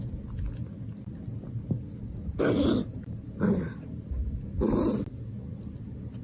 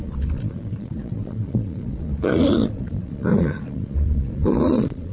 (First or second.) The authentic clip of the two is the first